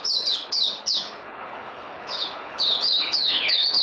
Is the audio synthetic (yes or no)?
yes